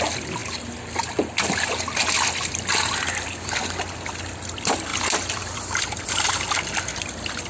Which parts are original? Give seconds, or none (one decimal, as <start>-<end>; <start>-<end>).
0.0-7.5

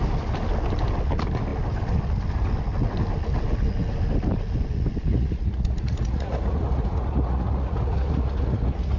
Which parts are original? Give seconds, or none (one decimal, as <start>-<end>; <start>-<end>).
0.0-5.1